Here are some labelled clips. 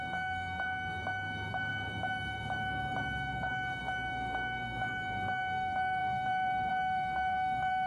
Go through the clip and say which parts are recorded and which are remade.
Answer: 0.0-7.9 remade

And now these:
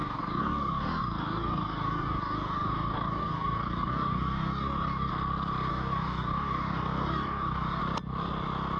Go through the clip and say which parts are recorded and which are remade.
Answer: 0.0-5.1 remade; 5.1-5.7 recorded; 5.7-7.8 remade; 7.8-8.8 recorded

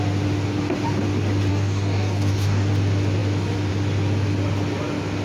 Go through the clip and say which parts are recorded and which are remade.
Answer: 0.0-1.5 recorded; 1.5-2.7 remade; 2.7-5.2 recorded

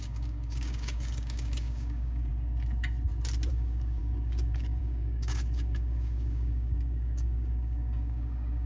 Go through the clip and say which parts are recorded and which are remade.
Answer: 0.0-2.3 remade; 2.3-3.5 recorded; 3.5-8.7 remade